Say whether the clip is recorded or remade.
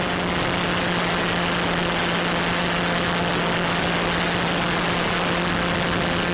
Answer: recorded